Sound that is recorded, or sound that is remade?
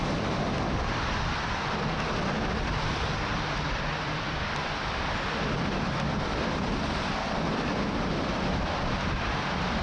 remade